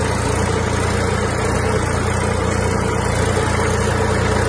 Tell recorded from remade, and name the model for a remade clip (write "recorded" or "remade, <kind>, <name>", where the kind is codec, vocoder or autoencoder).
recorded